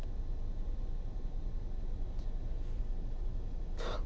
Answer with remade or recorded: recorded